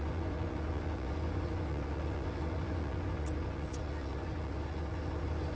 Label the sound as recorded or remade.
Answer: remade